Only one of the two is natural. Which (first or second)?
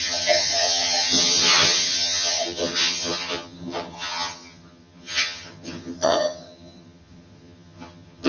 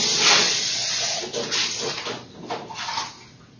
second